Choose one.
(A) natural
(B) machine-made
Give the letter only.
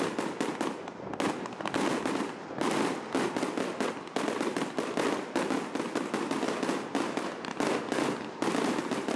A